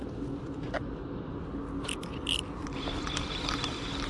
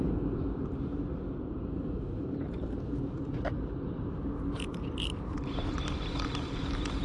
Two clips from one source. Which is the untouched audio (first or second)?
first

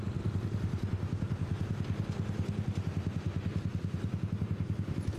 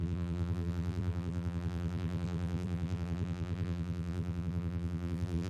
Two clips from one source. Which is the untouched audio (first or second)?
first